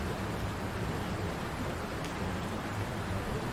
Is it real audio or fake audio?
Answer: real